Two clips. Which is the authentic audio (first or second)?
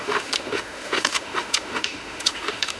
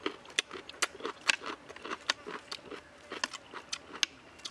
second